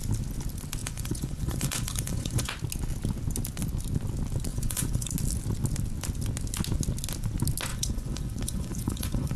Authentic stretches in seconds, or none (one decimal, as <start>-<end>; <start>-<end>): 0.0-0.8; 2.5-4.5; 5.1-7.7